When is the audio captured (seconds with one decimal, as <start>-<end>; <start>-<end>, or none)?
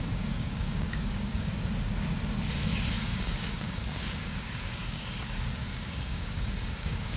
1.5-2.9